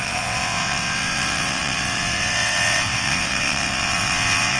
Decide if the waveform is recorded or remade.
remade